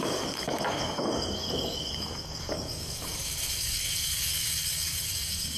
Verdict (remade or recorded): remade